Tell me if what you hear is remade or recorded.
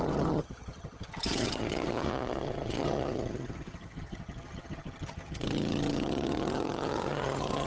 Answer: remade